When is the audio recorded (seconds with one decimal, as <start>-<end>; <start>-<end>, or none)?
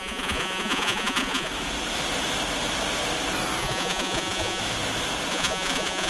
1.5-3.6; 4.6-5.3